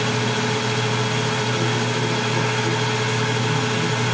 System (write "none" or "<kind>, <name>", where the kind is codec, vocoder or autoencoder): none